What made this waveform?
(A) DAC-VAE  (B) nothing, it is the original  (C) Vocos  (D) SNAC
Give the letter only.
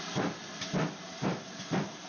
B